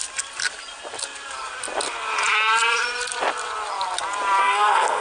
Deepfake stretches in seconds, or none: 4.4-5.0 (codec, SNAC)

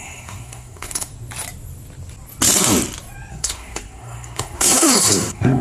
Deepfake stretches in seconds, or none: 0.0-1.1 (codec, SNAC); 3.3-5.6

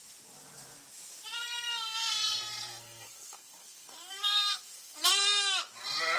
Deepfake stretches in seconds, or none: 1.4-5.1 (codec, SNAC)

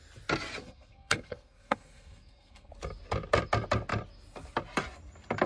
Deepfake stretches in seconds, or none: 0.6-2.7 (codec, SNAC)

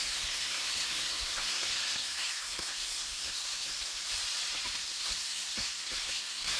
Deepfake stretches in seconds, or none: 0.0-4.0 (codec, SNAC); 4.8-6.6